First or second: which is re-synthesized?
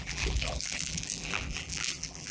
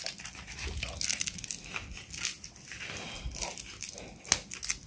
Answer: first